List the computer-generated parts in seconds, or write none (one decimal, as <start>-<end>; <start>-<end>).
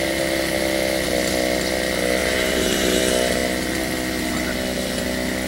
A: 2.2-3.0